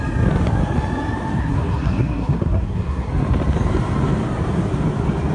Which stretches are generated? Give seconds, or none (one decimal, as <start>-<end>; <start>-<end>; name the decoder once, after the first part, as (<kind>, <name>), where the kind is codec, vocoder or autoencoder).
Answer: 1.4-3.1 (codec, SNAC)